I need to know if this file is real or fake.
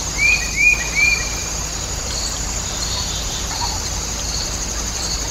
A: fake